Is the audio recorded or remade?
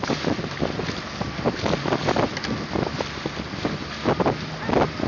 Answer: recorded